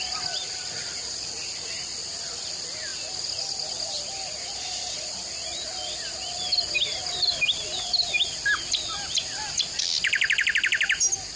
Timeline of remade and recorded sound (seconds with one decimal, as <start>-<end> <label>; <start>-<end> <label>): 0.0-11.4 recorded